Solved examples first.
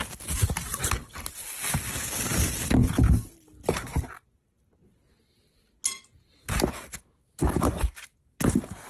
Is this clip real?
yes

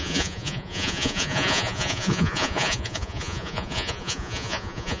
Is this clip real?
no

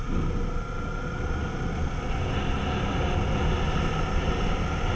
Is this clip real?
yes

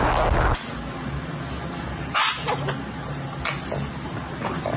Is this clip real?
yes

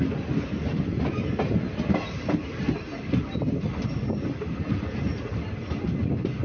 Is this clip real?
yes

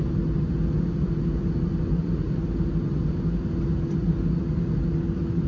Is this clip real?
yes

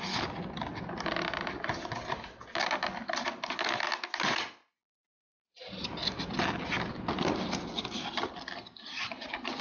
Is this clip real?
yes